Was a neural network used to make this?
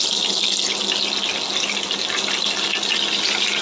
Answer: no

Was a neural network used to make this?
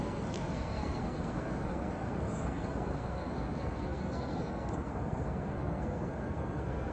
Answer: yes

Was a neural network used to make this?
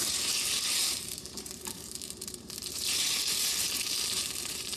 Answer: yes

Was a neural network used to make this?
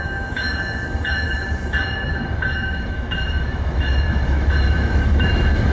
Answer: yes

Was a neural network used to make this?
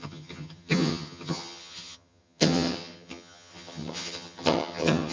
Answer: yes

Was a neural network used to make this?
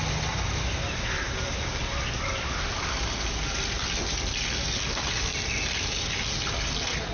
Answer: no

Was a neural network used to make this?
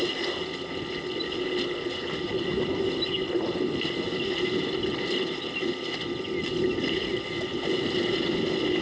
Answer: no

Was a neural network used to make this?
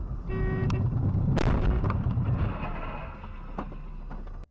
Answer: no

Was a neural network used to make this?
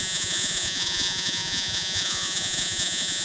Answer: yes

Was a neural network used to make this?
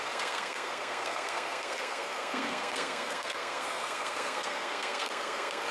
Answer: yes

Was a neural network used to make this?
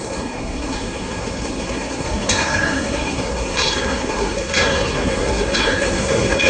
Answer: yes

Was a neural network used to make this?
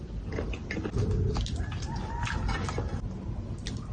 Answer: no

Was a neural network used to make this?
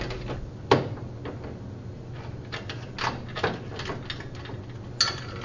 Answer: no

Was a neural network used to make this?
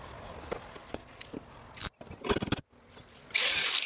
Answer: no